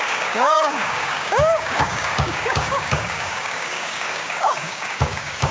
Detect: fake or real fake